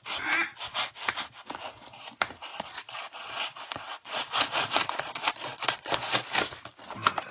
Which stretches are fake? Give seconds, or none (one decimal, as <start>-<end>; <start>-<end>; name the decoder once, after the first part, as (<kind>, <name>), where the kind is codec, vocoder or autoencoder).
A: 2.5-5.9 (vocoder, Vocos)

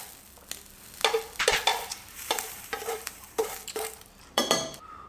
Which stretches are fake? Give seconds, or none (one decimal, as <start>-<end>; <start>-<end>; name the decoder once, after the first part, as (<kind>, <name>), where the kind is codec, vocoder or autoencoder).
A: 1.7-5.1 (vocoder, BigVGAN v2)

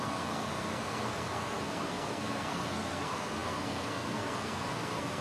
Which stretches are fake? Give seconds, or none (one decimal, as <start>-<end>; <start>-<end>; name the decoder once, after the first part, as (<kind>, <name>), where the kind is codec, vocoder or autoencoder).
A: 0.0-5.2 (codec, SNAC)

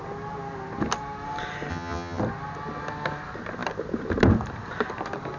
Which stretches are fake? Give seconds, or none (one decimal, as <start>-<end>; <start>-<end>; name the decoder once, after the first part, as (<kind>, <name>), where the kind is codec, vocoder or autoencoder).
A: 1.7-2.2 (vocoder, HiFi-GAN)

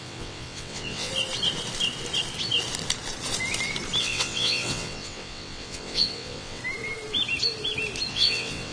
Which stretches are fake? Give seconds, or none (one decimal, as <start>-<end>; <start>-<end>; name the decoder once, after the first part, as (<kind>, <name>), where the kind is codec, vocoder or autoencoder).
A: 0.0-1.1 (vocoder, WaveNeXt); 4.0-6.6; 8.1-8.7

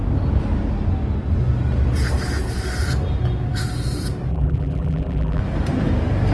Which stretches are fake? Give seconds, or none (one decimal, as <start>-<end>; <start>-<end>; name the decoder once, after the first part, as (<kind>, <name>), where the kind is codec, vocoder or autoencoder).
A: 4.3-5.4 (vocoder, BigVGAN v2)